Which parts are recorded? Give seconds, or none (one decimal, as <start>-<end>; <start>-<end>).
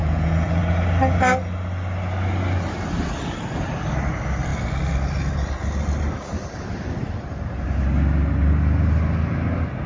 0.6-9.9